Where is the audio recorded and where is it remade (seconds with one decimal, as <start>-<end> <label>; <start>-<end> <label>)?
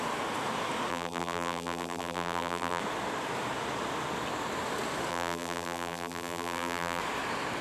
0.0-0.9 recorded; 0.9-2.8 remade; 2.8-5.1 recorded; 5.1-7.0 remade; 7.0-7.6 recorded